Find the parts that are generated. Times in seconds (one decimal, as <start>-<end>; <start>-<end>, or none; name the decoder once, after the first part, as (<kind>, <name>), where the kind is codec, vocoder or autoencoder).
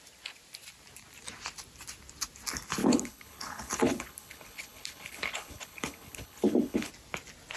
2.8-6.9 (codec, HILCodec)